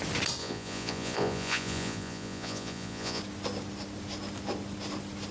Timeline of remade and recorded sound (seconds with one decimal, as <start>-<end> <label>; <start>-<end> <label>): 0.0-0.4 recorded; 0.4-3.2 remade; 3.2-5.3 recorded